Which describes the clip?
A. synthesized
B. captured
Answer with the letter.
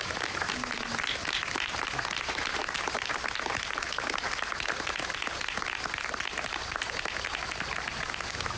B